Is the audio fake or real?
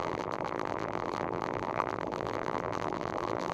fake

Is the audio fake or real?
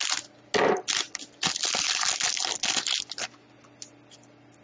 real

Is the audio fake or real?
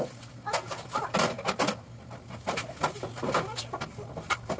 real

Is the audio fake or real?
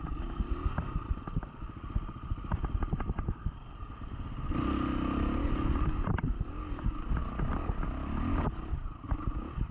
real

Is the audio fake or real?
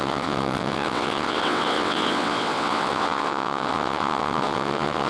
fake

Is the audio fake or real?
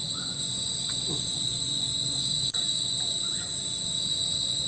fake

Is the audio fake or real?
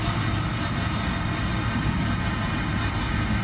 real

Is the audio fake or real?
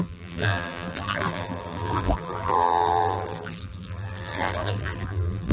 fake